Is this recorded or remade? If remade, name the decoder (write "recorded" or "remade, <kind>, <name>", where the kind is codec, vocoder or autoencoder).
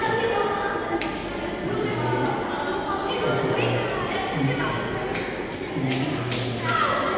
recorded